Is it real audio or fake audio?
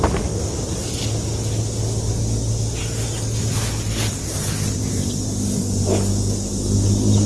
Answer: real